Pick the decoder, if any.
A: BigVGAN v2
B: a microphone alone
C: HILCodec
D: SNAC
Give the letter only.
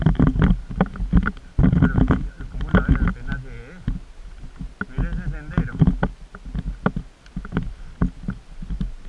B